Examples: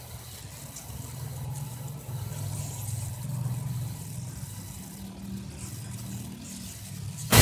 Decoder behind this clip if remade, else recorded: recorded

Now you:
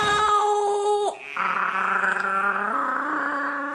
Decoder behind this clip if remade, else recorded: recorded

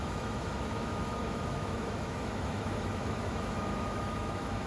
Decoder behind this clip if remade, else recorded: remade, autoencoder, DAC-VAE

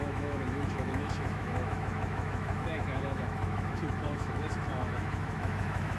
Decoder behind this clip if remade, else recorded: remade, autoencoder, DAC-VAE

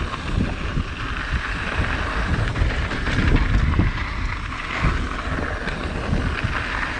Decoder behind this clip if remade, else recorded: recorded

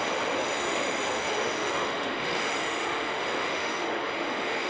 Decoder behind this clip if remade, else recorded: remade, autoencoder, DAC-VAE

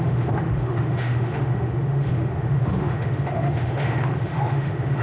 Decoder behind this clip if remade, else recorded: remade, autoencoder, DAC-VAE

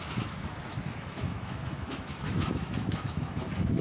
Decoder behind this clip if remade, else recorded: remade, autoencoder, DAC-VAE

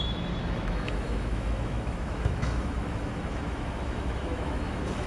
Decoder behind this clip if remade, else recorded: remade, autoencoder, DAC-VAE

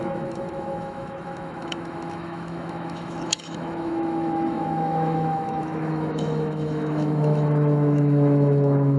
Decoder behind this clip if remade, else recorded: remade, autoencoder, DAC-VAE